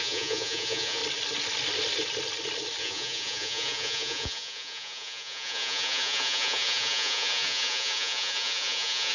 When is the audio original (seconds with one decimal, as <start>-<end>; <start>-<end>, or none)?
1.0-2.8